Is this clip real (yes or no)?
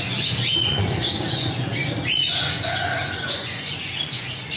no